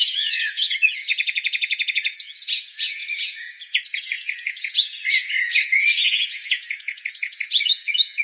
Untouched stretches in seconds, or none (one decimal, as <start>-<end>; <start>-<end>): none